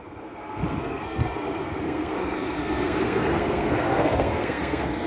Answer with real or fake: fake